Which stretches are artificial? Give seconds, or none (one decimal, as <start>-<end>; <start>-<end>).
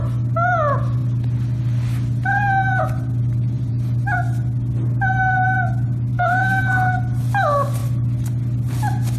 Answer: 6.1-6.6